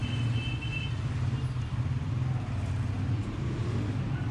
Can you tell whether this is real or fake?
real